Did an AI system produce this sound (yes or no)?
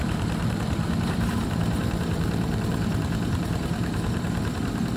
yes